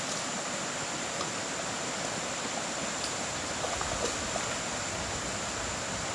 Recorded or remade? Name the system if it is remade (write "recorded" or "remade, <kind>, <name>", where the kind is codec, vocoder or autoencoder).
recorded